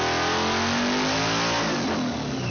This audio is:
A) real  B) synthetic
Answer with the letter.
A